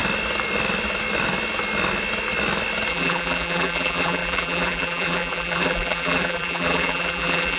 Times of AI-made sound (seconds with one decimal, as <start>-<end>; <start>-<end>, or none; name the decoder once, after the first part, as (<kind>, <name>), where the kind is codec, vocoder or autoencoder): 2.9-7.6 (vocoder, BigVGAN v2)